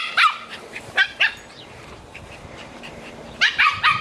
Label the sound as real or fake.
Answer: fake